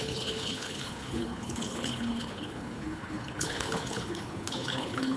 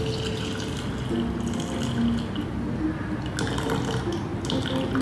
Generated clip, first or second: first